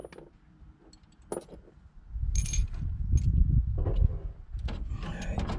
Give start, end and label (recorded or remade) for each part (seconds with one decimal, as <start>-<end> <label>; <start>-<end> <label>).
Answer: 0.0-5.6 recorded